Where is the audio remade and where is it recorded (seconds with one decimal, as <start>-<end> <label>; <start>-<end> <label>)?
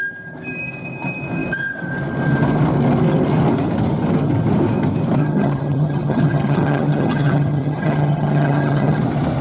0.0-5.2 recorded; 5.2-9.0 remade; 9.0-9.4 recorded